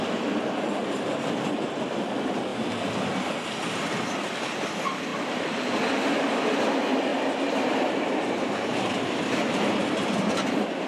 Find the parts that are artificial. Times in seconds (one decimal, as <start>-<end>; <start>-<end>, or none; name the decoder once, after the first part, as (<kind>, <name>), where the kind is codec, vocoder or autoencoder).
0.0-2.5 (vocoder, BigVGAN v2); 4.1-5.1; 6.0-10.9